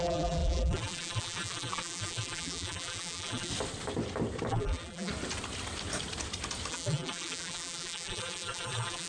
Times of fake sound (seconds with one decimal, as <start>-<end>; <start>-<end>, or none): 0.0-3.5; 4.5-5.1; 6.7-9.1